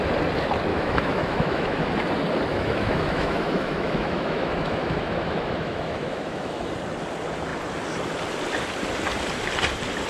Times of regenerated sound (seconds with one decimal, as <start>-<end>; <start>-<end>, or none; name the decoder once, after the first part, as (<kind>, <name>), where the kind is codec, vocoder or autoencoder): 0.7-1.9 (autoencoder, DAC-VAE); 2.5-6.7